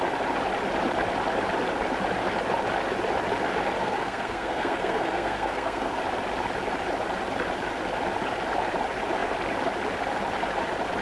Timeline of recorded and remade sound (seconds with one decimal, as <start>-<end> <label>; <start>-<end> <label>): 0.0-3.8 recorded; 3.8-5.9 remade; 5.9-11.0 recorded